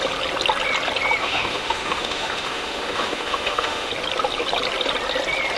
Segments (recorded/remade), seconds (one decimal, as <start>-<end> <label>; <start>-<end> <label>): 0.0-1.2 recorded; 1.2-3.9 remade; 3.9-5.6 recorded